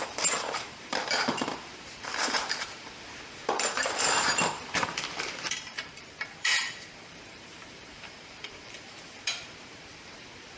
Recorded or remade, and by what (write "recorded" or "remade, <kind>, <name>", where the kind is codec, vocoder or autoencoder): remade, vocoder, BigVGAN v2